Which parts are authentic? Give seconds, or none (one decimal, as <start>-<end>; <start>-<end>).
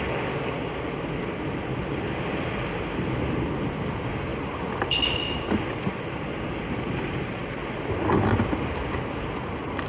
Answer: 0.0-9.9